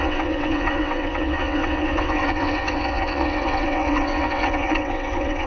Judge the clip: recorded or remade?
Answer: remade